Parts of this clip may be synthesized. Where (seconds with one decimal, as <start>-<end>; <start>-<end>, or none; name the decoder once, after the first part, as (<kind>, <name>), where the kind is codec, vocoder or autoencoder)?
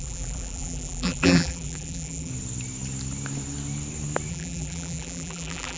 0.0-2.3 (vocoder, BigVGAN v2); 4.3-5.8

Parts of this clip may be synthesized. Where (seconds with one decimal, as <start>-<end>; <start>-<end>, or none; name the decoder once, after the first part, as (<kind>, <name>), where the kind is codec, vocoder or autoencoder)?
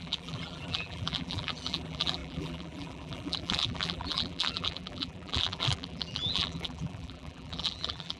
0.0-8.2 (vocoder, BigVGAN v2)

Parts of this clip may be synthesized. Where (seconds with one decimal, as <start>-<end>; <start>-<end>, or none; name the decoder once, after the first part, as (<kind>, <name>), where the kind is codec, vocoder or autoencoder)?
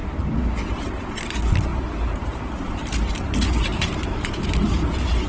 0.0-0.9 (vocoder, BigVGAN v2); 1.7-5.3